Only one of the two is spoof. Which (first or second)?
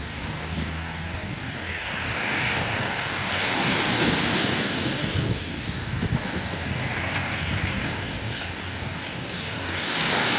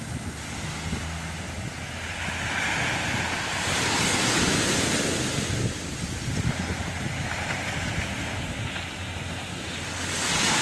first